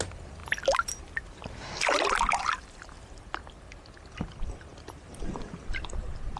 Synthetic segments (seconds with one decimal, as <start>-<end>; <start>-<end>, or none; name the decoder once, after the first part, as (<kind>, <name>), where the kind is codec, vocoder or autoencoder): none